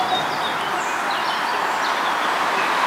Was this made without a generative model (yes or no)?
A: yes